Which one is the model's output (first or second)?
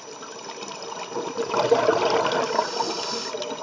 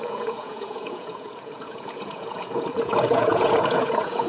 second